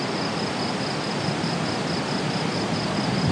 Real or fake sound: real